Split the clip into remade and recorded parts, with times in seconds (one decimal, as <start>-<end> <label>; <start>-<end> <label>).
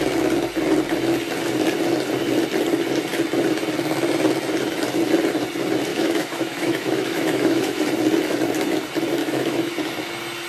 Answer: 0.0-5.9 recorded; 5.9-7.8 remade; 7.8-9.2 recorded; 9.2-9.7 remade; 9.7-10.5 recorded